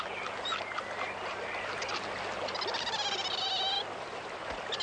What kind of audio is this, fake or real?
real